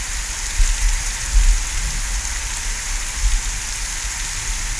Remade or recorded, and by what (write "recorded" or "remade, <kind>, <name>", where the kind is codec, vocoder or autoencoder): recorded